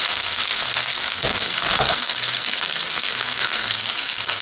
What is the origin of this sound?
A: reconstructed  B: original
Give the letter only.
A